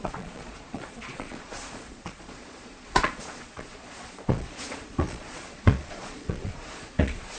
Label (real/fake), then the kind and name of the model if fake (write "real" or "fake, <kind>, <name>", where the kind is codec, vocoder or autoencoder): fake, vocoder, Vocos